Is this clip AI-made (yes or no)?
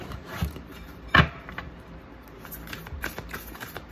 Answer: yes